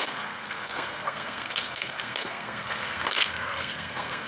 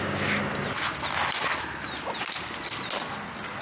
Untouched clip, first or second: second